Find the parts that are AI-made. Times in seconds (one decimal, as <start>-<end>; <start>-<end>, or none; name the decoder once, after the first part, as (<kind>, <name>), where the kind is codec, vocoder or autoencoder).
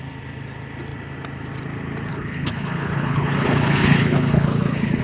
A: 2.1-5.0 (codec, HILCodec)